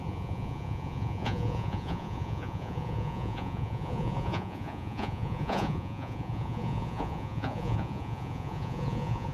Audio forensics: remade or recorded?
remade